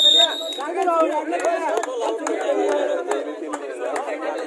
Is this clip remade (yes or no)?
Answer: no